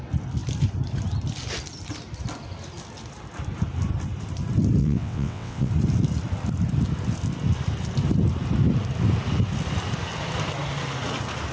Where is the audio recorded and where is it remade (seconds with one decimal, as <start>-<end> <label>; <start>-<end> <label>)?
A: 0.0-4.8 recorded; 4.8-5.7 remade; 5.7-11.5 recorded